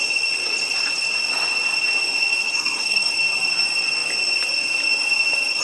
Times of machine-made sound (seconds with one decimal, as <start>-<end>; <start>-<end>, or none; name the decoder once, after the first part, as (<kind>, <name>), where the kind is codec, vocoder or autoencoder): 2.4-3.1 (codec, SNAC)